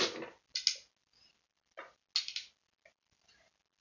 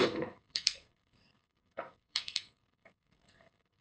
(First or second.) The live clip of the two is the first